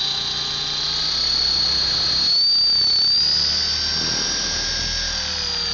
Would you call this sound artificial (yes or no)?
no